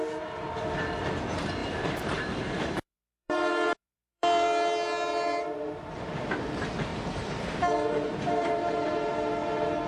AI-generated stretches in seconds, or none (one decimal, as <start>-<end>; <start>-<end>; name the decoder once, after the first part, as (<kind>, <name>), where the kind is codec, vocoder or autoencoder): 1.6-5.8 (vocoder, BigVGAN v2); 6.9-9.1